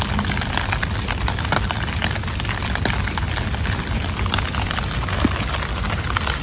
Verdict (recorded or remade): recorded